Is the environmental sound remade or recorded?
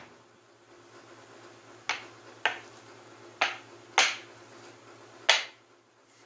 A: recorded